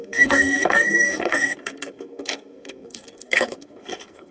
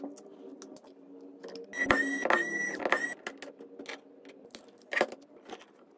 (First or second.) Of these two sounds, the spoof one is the first